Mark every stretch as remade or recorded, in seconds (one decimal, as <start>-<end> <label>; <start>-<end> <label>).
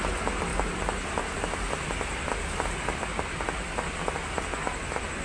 0.0-5.2 recorded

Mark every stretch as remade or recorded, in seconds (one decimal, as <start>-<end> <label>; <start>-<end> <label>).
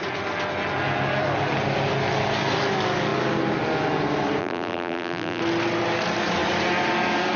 0.0-4.4 recorded; 4.4-5.4 remade; 5.4-7.4 recorded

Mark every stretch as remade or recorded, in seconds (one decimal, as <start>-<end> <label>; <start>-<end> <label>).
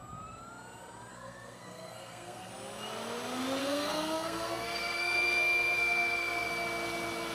0.0-1.1 recorded; 1.1-2.5 remade; 2.5-3.6 recorded; 3.6-6.5 remade; 6.5-7.3 recorded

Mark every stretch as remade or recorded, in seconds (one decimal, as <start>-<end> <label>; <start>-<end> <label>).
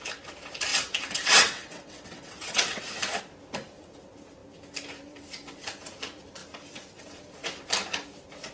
0.0-0.7 recorded; 0.7-2.8 remade; 2.8-8.5 recorded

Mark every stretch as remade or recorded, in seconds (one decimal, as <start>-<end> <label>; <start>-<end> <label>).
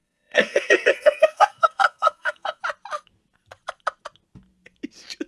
0.0-2.6 remade; 2.6-5.3 recorded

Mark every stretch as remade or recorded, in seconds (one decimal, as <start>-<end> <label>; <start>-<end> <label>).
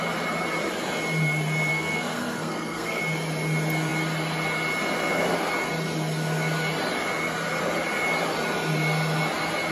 0.0-1.7 recorded; 1.7-3.0 remade; 3.0-9.7 recorded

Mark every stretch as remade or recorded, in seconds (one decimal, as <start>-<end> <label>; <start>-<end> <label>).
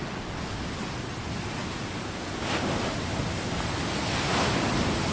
0.0-5.1 recorded